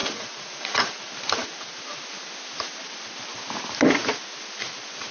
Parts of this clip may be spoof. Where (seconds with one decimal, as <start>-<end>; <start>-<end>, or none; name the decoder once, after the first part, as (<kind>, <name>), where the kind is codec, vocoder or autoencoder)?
0.0-1.1 (vocoder, Vocos)